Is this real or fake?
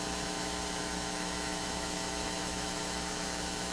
fake